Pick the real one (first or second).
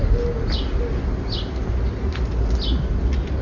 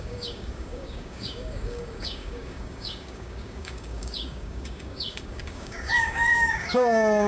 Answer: first